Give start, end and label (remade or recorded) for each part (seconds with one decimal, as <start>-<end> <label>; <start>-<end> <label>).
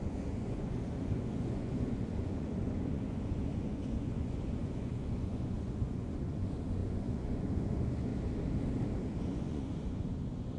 0.0-8.1 remade; 8.1-9.2 recorded; 9.2-10.6 remade